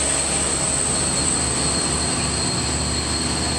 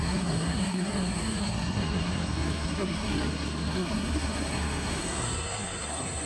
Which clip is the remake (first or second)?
second